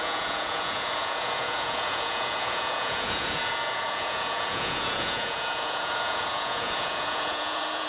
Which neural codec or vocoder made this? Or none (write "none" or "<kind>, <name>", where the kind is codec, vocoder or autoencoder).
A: vocoder, Vocos